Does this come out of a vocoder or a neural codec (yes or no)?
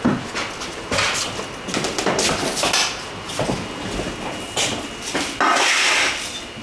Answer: no